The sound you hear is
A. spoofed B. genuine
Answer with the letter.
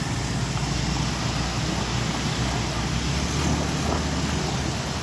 B